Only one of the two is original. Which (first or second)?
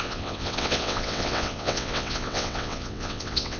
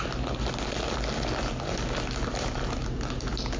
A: second